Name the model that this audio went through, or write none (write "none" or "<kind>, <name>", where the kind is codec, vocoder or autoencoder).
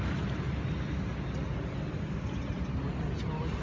none